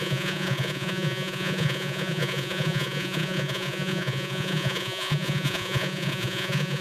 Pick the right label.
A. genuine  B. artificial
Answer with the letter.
B